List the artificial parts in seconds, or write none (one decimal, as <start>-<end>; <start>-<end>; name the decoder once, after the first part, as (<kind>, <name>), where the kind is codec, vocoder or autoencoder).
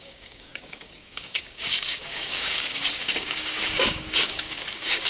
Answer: 0.0-5.1 (codec, DAC)